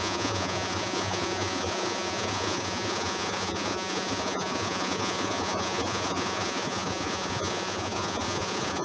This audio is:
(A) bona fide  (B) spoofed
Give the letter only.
B